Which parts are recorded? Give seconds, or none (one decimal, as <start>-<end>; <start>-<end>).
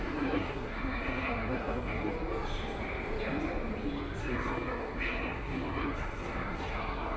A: 2.1-4.2